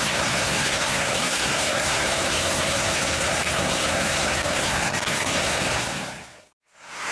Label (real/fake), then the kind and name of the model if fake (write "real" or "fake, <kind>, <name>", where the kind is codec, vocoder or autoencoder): fake, codec, SNAC